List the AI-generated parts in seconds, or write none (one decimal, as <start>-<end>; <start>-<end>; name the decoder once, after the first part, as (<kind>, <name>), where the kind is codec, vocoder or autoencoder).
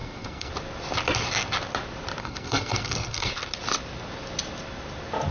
0.0-0.5 (codec, SNAC); 2.2-3.3